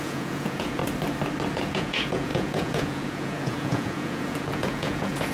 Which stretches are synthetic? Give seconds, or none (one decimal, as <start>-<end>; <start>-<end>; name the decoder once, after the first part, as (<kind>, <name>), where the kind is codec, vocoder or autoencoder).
0.0-0.8 (vocoder, Vocos); 1.5-5.3